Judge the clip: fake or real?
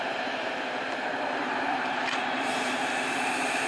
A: fake